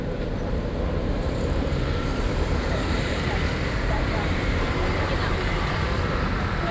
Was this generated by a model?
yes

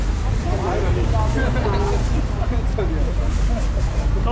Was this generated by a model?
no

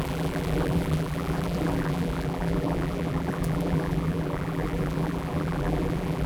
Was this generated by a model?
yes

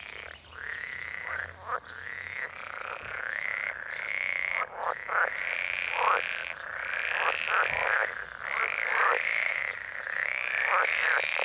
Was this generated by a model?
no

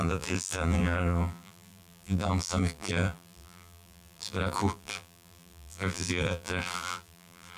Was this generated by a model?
yes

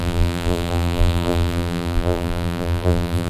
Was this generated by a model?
yes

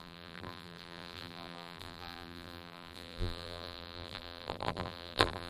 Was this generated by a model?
yes